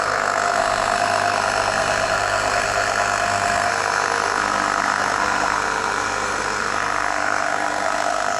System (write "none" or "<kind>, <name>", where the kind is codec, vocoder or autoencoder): codec, SNAC